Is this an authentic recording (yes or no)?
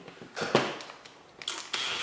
yes